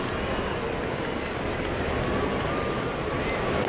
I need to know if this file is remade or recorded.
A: recorded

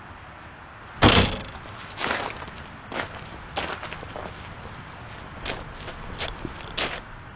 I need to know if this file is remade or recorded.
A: recorded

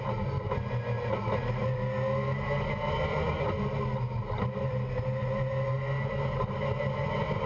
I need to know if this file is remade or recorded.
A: recorded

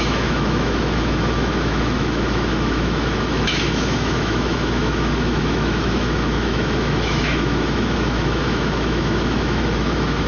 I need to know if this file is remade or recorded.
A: remade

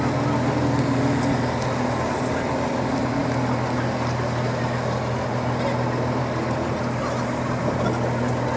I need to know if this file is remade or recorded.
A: recorded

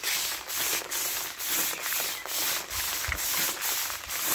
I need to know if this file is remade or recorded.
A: recorded